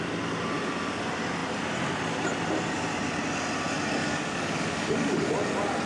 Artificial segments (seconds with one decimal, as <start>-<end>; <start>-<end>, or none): 4.0-5.3